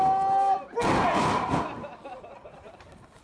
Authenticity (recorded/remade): recorded